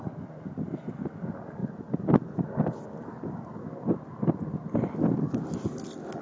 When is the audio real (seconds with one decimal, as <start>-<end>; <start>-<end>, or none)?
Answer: 0.0-6.2